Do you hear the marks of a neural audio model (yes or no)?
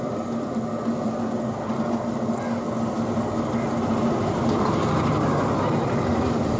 no